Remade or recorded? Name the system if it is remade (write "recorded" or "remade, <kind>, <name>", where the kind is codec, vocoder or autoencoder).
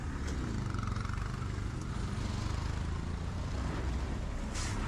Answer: recorded